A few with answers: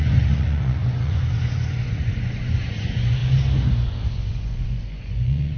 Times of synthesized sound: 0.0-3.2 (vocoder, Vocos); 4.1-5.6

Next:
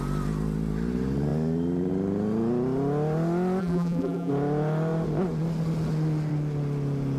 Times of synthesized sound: 3.6-4.3 (vocoder, BigVGAN v2)

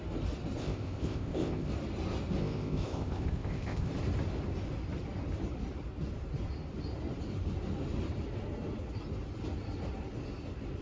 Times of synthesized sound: 0.6-1.7 (codec, ZipCodec); 2.4-3.9